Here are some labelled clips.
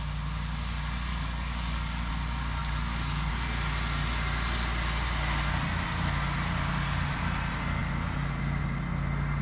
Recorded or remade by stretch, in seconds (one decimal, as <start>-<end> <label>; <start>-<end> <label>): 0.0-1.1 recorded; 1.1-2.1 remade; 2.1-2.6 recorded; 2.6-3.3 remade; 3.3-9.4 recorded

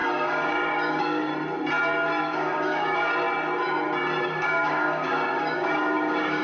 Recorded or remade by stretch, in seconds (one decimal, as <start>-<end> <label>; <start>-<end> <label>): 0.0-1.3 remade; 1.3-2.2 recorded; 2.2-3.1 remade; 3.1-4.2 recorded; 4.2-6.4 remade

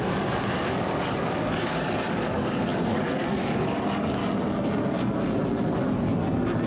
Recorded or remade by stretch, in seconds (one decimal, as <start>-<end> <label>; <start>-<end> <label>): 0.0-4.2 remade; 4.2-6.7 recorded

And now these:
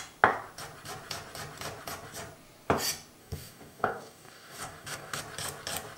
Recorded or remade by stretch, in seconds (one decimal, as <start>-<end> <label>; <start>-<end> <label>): 0.0-3.2 recorded; 3.2-5.2 remade; 5.2-6.0 recorded